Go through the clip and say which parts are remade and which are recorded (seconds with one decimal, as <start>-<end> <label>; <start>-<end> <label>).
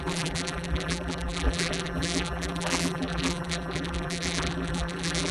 0.0-5.3 remade